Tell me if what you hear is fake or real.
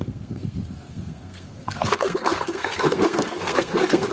fake